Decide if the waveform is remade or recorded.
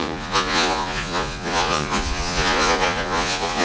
remade